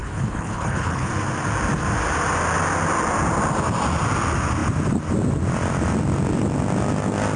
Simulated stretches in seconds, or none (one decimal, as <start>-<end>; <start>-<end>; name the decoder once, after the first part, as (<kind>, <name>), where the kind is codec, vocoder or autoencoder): 0.0-1.1 (codec, HILCodec)